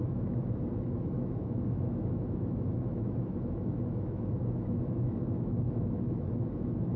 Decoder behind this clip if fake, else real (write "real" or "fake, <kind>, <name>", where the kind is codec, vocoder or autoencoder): fake, autoencoder, DAC-VAE